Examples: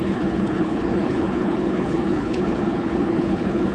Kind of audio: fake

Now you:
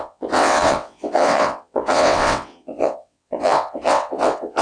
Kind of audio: fake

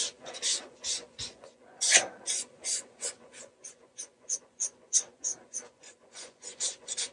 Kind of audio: fake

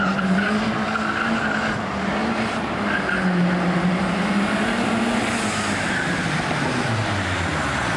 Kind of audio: real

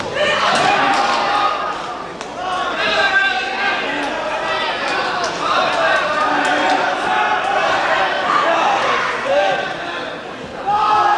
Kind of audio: real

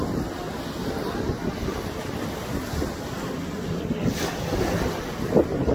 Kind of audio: real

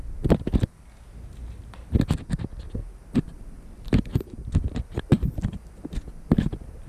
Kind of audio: real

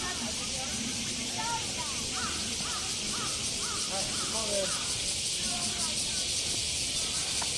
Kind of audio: real